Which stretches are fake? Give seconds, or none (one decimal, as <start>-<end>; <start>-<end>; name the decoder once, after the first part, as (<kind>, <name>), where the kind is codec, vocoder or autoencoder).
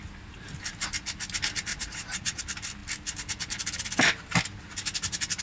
1.7-2.4 (vocoder, Vocos)